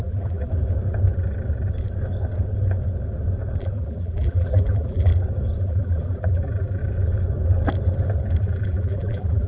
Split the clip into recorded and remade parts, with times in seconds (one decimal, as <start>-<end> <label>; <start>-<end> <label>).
0.0-0.5 remade; 0.5-3.6 recorded; 3.6-5.1 remade; 5.1-5.6 recorded; 5.6-6.8 remade; 6.8-8.4 recorded; 8.4-9.5 remade